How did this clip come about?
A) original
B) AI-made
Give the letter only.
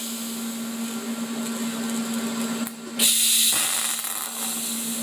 A